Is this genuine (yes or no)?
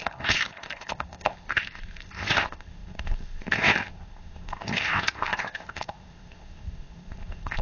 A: no